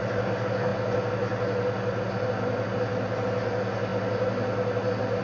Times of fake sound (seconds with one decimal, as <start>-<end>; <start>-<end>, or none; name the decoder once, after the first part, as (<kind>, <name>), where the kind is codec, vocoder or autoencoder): none